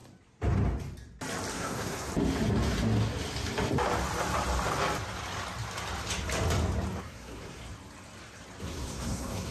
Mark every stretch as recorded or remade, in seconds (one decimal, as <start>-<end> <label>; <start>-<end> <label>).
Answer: 0.0-1.5 recorded; 1.5-2.1 remade; 2.1-7.0 recorded; 7.0-7.6 remade; 7.6-8.6 recorded; 8.6-9.5 remade